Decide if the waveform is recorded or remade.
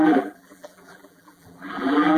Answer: remade